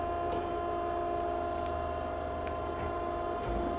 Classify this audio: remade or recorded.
recorded